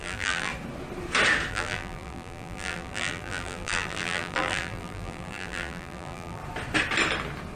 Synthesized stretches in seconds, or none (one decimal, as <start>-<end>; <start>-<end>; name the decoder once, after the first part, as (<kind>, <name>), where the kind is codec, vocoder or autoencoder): 0.0-0.5 (vocoder, BigVGAN v2); 1.5-6.4